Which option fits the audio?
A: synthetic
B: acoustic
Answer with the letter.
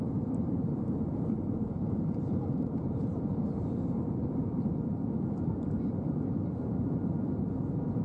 A